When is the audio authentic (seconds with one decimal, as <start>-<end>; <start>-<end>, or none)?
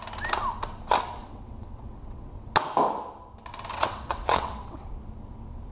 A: 0.0-1.2; 2.5-3.7; 4.9-5.7